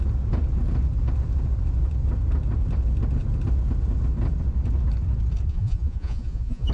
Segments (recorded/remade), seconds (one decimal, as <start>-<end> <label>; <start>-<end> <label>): 0.0-5.5 recorded; 5.5-6.7 remade